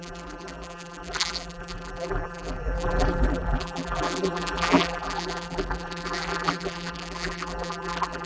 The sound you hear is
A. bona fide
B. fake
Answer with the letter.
B